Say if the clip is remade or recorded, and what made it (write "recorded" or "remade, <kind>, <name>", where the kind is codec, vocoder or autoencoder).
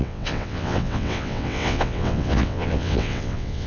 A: remade, vocoder, WaveNeXt